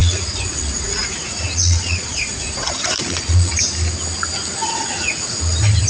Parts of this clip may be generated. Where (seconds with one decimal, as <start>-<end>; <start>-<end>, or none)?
0.0-3.5; 4.6-5.4